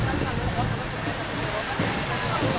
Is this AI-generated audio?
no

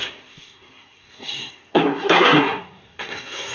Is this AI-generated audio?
yes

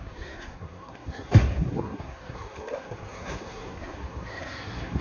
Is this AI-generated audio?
yes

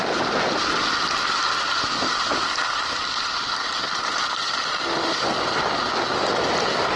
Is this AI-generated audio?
no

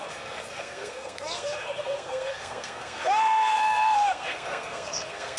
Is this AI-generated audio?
yes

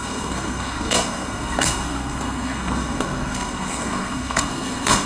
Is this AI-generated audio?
yes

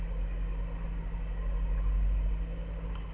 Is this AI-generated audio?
no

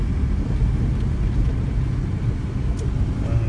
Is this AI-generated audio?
no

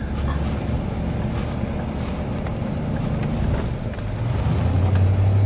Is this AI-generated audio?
no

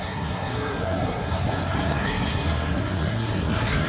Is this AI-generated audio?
yes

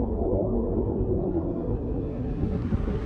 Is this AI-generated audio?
yes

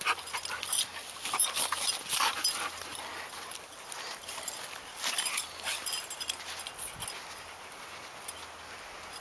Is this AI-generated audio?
no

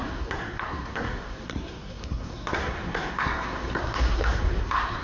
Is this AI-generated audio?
yes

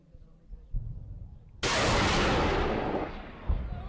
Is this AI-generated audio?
no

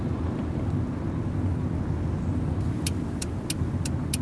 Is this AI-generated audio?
no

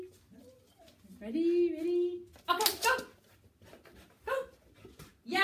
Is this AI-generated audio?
no